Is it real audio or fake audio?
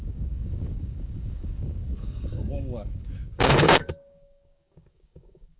fake